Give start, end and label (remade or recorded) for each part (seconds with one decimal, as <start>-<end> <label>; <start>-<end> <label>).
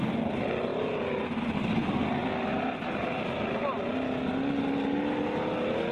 0.0-5.9 recorded